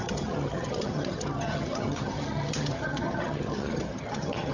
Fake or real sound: fake